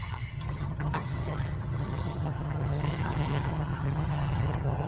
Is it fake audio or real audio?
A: fake